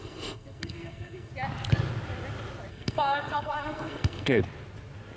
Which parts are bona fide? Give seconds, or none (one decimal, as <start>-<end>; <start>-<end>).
1.3-2.7; 4.4-5.2